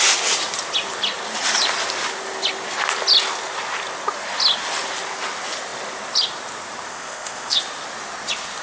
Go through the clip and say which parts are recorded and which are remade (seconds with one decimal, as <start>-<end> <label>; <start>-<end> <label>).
0.0-6.9 recorded; 6.9-7.6 remade; 7.6-8.6 recorded